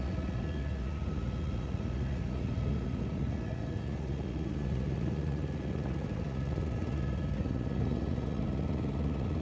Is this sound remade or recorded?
remade